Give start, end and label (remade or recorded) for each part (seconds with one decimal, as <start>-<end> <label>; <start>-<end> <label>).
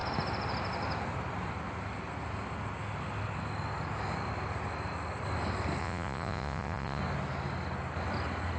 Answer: 0.0-5.8 recorded; 5.8-7.0 remade; 7.0-8.6 recorded